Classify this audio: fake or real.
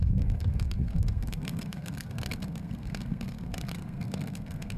fake